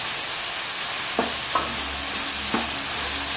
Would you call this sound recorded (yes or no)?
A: yes